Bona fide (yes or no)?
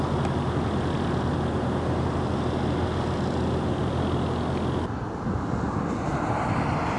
yes